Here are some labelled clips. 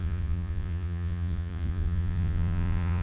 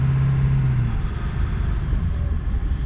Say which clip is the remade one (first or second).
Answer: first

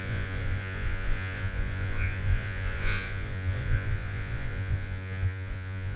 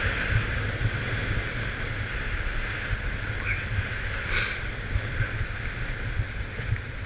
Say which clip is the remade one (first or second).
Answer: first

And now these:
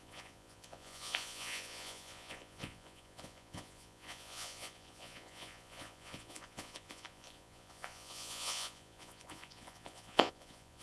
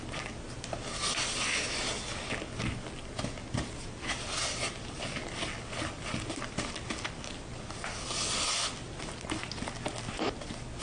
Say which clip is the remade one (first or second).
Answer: first